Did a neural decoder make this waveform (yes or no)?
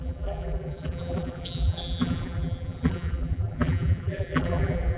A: yes